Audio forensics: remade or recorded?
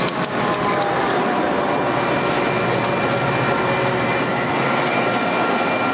recorded